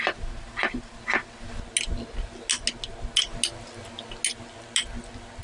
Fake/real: real